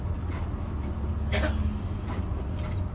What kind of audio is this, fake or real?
real